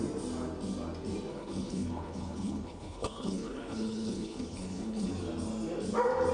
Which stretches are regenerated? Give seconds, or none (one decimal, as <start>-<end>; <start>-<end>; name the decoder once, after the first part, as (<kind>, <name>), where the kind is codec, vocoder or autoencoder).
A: 1.3-5.1 (codec, HILCodec)

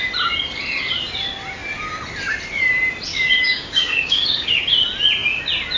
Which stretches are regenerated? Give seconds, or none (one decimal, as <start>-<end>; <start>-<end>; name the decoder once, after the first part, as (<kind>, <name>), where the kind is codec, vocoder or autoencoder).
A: 3.1-4.6 (codec, DAC)

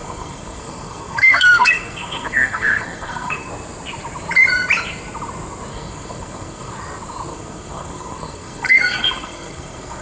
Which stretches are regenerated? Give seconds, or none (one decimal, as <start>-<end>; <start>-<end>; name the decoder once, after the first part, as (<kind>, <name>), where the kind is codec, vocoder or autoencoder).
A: 0.0-3.5 (codec, SNAC); 5.7-6.7; 7.3-10.0